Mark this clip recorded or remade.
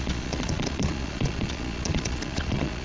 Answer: remade